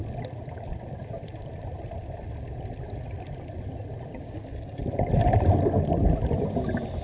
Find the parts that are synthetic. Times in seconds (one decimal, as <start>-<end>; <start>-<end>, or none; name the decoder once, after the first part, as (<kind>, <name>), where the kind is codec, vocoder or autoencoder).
4.2-4.8 (codec, DAC)

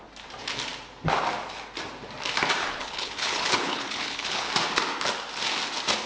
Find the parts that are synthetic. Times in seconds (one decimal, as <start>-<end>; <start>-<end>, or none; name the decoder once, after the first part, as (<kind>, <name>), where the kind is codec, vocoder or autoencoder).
2.6-4.5 (codec, HILCodec)

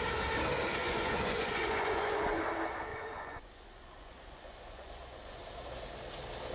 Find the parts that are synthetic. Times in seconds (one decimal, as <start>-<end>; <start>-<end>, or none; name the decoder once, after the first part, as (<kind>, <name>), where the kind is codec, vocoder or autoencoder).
0.8-2.4 (vocoder, Vocos); 2.9-5.4

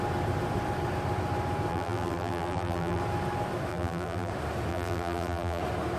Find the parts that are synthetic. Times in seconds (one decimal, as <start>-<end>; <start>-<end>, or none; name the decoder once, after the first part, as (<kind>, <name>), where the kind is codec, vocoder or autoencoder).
1.7-3.0 (vocoder, BigVGAN v2); 3.7-4.3; 4.7-5.6

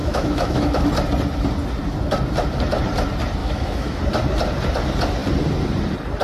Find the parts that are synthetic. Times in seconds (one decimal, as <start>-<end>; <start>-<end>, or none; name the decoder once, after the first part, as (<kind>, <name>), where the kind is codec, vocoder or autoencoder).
0.0-0.8 (autoencoder, DAC-VAE); 3.4-4.0

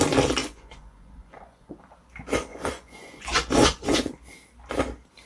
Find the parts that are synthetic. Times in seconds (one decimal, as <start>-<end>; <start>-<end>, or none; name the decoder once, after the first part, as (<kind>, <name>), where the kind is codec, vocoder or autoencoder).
0.4-1.8 (vocoder, Vocos); 2.5-4.1

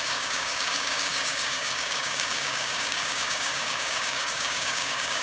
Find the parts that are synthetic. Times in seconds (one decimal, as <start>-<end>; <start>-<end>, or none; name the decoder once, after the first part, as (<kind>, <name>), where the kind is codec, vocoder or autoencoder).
0.0-5.2 (codec, DAC)

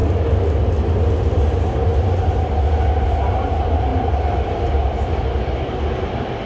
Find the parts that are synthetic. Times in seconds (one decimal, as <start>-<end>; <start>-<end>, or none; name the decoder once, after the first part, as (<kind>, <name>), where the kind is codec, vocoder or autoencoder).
none